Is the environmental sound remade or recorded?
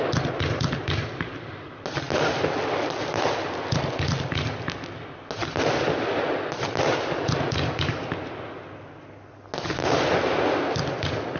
recorded